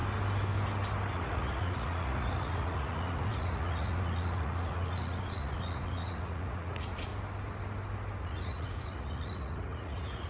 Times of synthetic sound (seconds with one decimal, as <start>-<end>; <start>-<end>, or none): 1.1-7.1; 8.2-10.3